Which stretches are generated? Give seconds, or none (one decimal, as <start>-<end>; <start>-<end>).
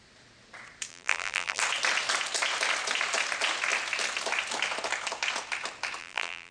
0.9-1.6; 6.0-6.5